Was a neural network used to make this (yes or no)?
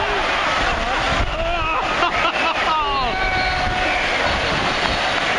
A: no